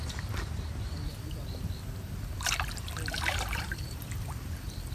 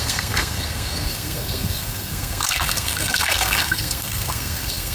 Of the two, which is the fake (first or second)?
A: second